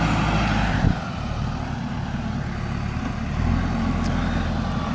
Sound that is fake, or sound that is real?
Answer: real